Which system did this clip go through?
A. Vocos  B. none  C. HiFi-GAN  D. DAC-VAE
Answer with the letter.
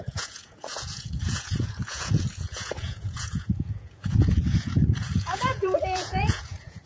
A